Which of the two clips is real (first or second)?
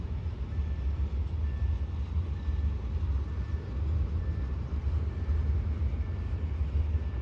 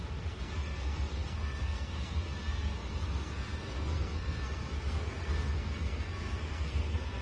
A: first